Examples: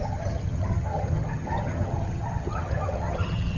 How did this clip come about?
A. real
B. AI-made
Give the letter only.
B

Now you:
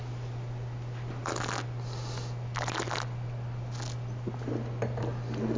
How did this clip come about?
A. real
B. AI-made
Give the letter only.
A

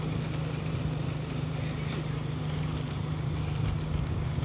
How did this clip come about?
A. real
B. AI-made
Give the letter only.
A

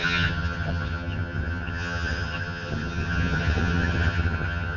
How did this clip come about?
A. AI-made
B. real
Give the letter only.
A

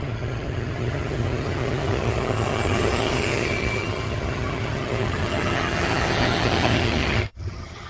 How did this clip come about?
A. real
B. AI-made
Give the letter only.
B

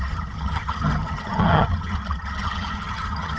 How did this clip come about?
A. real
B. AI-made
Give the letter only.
B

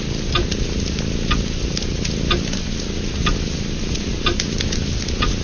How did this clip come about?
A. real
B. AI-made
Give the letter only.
A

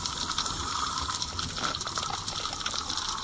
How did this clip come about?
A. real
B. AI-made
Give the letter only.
A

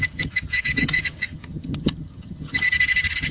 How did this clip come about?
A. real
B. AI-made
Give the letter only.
B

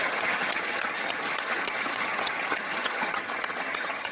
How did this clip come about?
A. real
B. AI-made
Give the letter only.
B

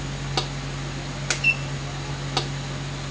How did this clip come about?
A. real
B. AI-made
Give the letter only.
A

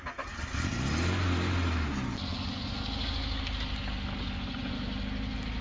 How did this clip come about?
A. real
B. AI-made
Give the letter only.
A